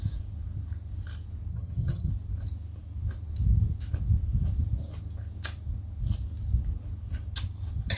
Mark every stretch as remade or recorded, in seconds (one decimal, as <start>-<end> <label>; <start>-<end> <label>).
0.0-1.5 recorded; 1.5-2.1 remade; 2.1-8.0 recorded